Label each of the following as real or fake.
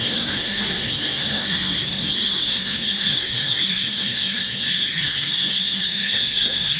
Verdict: fake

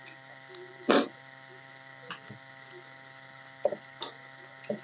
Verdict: real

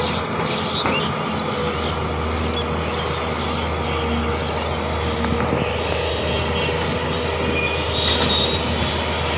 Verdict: real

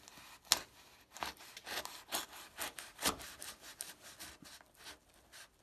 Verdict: real